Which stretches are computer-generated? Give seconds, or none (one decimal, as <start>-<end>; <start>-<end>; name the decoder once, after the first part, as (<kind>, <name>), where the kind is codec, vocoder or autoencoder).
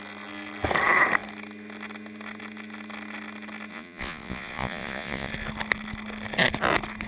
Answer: 3.7-5.3 (vocoder, Vocos)